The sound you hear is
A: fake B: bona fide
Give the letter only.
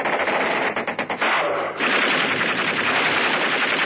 B